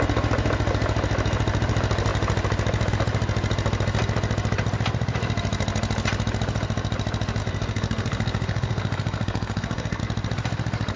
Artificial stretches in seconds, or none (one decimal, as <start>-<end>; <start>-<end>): 7.4-10.0